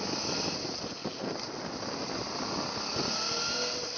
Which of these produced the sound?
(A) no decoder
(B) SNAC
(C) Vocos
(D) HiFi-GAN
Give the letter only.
A